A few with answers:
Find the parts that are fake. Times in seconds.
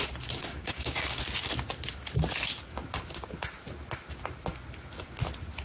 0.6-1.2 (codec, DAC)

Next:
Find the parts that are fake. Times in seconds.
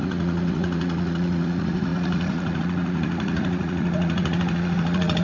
0.0-5.2 (vocoder, Vocos)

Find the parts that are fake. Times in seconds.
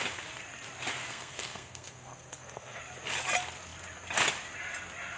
1.1-2.8 (codec, SNAC)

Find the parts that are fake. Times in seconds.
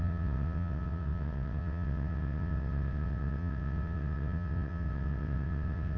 0.0-6.0 (vocoder, WaveNeXt)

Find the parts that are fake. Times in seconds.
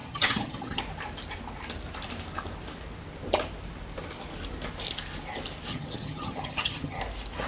0.0-0.8 (vocoder, HiFi-GAN); 5.7-7.0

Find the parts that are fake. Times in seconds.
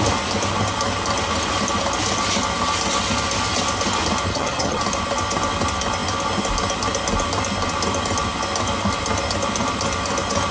4.3-4.8 (vocoder, HiFi-GAN)